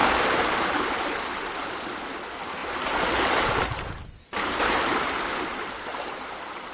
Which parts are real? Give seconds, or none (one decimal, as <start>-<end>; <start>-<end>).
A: 1.7-2.6